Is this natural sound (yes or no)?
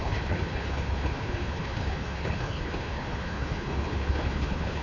no